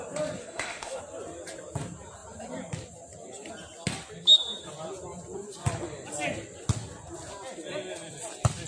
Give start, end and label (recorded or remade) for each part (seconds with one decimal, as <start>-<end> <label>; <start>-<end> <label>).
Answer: 0.0-0.4 recorded; 0.4-1.0 remade; 1.0-8.7 recorded